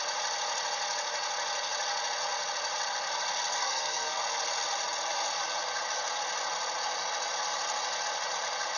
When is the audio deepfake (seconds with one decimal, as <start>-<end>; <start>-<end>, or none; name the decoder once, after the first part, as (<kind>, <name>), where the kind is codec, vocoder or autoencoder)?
3.6-4.2 (codec, SNAC)